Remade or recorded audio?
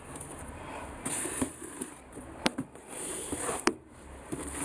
remade